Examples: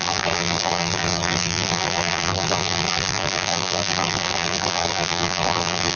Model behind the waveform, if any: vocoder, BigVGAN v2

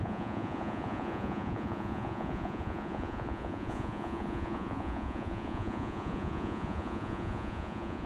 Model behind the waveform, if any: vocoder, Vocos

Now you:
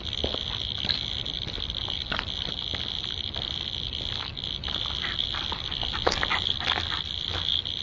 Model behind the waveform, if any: none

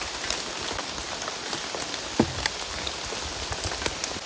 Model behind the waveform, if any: none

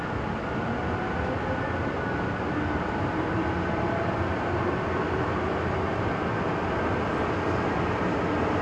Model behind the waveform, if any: none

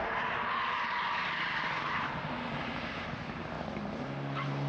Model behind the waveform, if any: none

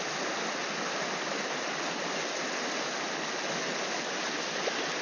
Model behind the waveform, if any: none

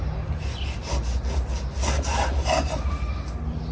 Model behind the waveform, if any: none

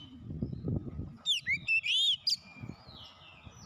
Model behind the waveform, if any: none